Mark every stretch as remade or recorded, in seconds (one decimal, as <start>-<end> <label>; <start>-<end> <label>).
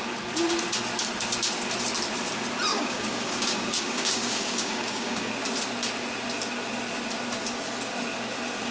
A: 0.0-2.7 recorded; 2.7-5.3 remade; 5.3-8.7 recorded